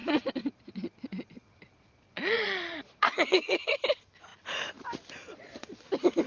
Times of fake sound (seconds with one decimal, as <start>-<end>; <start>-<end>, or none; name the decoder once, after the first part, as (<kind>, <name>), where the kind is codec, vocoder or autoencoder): 0.0-3.8 (vocoder, Vocos); 5.3-5.8